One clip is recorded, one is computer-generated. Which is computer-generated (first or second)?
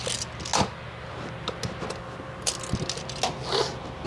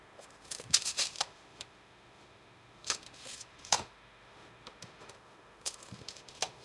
second